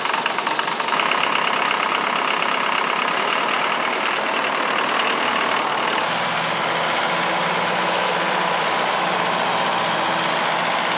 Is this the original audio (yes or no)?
yes